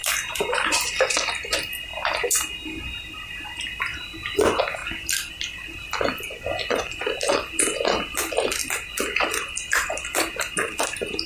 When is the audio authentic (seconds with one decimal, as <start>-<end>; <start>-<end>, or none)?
0.0-11.3

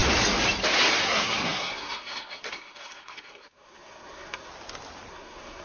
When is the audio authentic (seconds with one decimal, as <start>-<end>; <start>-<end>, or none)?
0.0-1.0; 4.5-5.1

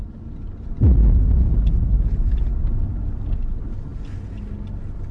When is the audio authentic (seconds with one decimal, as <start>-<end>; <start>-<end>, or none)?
0.0-5.1

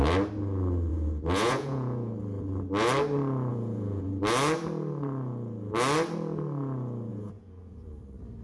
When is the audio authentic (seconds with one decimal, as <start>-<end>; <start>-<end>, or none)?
0.0-0.9; 2.1-3.5; 4.1-7.1; 8.0-8.4